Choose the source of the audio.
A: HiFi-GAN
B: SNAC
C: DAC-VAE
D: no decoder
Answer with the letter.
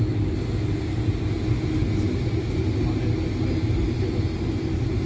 D